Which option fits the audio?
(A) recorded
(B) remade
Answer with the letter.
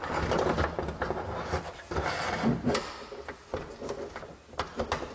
A